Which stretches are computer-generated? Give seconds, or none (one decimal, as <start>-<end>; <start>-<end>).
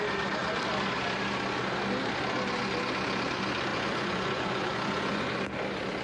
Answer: 3.7-5.3